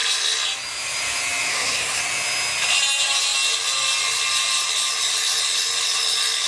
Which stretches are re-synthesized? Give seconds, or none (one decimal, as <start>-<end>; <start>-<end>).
1.5-2.0